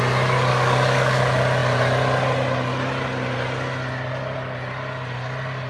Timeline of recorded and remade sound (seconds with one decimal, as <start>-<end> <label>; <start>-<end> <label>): 0.0-0.5 recorded; 0.5-1.2 remade; 1.2-5.7 recorded

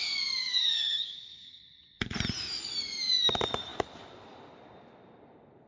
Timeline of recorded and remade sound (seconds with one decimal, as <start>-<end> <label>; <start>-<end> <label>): 0.0-0.4 recorded; 0.4-1.6 remade; 1.6-5.7 recorded